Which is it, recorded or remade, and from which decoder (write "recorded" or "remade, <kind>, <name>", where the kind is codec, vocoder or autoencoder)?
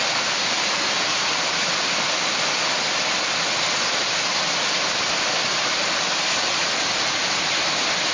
recorded